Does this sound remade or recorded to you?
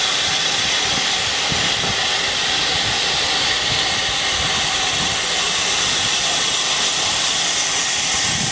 remade